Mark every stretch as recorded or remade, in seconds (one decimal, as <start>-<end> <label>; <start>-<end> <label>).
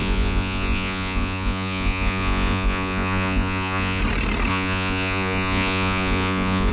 0.0-4.0 remade; 4.0-4.5 recorded; 4.5-6.7 remade